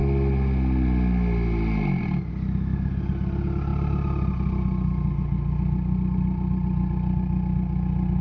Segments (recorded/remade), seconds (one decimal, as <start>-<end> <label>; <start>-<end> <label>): 0.0-8.2 recorded